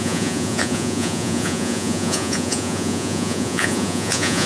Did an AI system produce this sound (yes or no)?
yes